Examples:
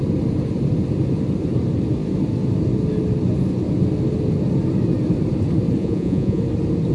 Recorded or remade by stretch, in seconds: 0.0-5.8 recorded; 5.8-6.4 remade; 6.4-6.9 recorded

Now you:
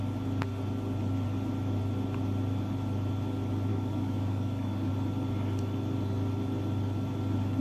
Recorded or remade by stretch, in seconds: 0.0-3.7 recorded; 3.7-4.9 remade; 4.9-7.6 recorded

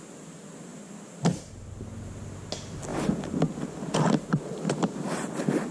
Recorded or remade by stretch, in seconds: 0.0-5.7 recorded

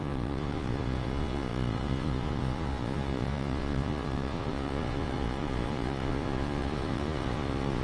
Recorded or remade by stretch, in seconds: 0.0-7.8 remade

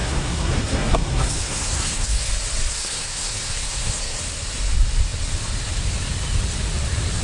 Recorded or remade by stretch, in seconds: 0.0-2.3 remade; 2.3-2.7 recorded; 2.7-4.2 remade; 4.2-7.2 recorded

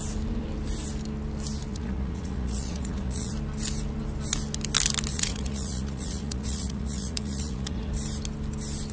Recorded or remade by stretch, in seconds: 0.0-1.7 recorded; 1.7-3.3 remade; 3.3-5.1 recorded; 5.1-7.9 remade; 7.9-8.9 recorded